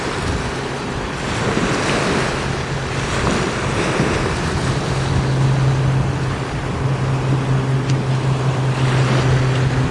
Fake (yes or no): no